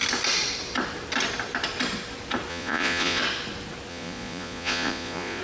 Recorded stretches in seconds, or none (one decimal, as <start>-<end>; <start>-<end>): 0.0-2.5; 3.2-3.9